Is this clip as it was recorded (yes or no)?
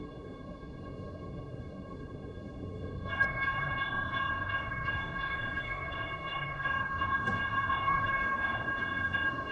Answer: no